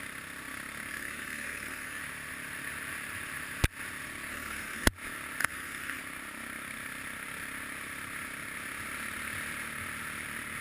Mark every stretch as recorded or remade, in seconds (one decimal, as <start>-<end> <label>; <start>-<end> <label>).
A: 0.0-0.9 recorded; 0.9-2.0 remade; 2.0-4.3 recorded; 4.3-4.9 remade; 4.9-5.4 recorded; 5.4-6.0 remade; 6.0-10.6 recorded